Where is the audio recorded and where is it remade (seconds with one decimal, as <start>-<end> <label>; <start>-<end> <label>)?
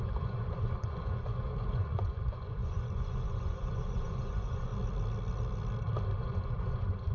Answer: 0.0-4.7 remade; 4.7-6.2 recorded; 6.2-7.1 remade